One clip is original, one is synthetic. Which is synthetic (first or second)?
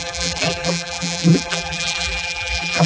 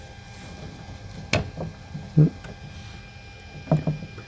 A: first